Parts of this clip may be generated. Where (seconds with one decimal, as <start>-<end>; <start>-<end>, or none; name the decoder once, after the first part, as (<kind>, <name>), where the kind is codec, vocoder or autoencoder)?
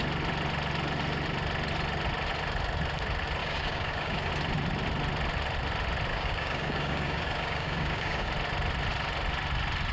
3.4-4.3 (codec, DAC); 6.1-8.3